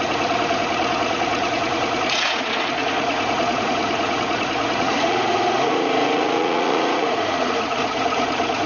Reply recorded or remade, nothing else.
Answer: remade